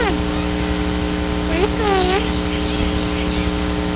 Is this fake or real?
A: real